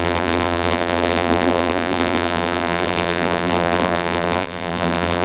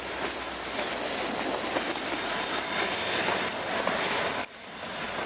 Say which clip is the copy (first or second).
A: first